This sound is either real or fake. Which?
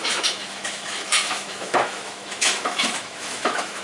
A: fake